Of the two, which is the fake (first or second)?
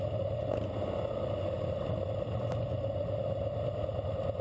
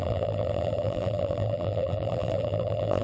second